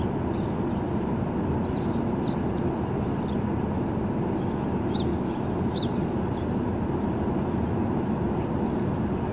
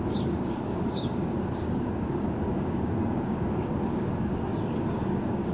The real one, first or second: first